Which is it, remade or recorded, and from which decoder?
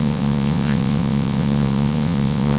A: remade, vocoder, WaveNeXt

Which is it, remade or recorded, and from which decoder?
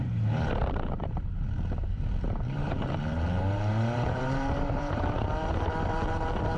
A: remade, vocoder, BigVGAN v2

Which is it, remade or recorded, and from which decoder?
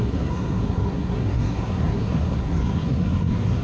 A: remade, codec, SNAC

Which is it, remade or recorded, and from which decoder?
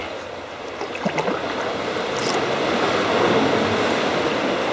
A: recorded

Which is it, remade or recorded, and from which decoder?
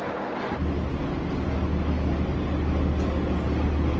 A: recorded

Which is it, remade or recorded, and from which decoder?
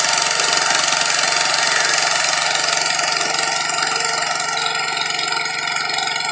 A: recorded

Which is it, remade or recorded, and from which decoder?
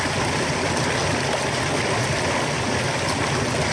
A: recorded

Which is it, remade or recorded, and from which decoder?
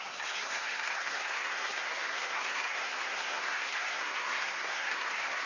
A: remade, codec, SNAC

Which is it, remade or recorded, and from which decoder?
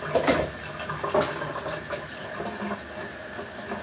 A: recorded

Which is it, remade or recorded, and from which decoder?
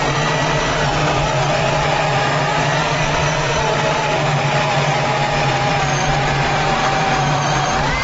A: recorded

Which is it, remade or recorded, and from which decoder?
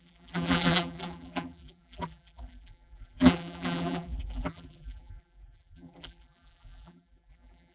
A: remade, vocoder, BigVGAN v2